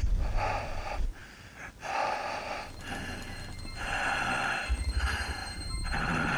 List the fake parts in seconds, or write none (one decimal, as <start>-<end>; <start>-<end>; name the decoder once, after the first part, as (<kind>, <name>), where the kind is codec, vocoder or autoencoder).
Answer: 5.4-6.4 (vocoder, BigVGAN v2)